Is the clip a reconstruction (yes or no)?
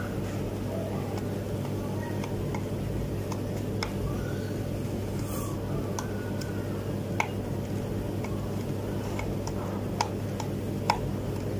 no